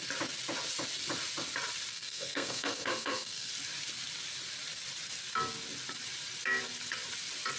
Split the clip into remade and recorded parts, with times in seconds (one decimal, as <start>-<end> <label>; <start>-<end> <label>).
0.0-1.9 recorded; 1.9-3.5 remade; 3.5-7.6 recorded